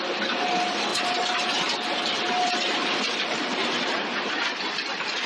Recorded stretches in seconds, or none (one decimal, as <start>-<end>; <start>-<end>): 0.0-0.9; 4.1-5.3